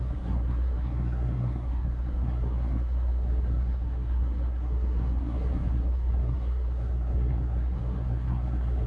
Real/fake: fake